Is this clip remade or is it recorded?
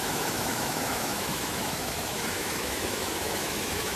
remade